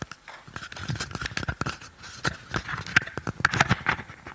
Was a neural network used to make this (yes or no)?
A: no